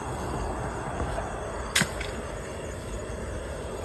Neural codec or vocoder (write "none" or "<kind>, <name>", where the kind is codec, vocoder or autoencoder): none